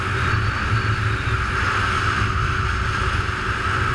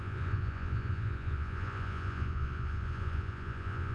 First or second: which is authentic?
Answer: first